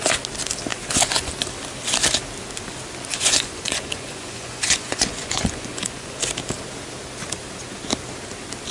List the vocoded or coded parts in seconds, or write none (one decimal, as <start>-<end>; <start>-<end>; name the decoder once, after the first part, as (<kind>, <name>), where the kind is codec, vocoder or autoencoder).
0.7-1.3 (vocoder, Vocos); 3.1-6.2